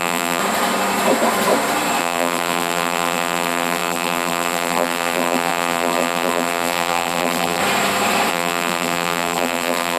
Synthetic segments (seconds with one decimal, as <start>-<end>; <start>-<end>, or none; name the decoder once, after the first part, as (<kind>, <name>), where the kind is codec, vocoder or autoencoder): 0.0-0.4 (vocoder, BigVGAN v2); 2.0-7.6; 8.3-10.0